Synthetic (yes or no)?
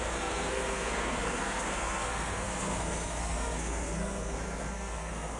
yes